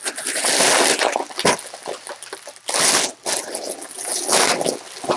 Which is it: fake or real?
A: real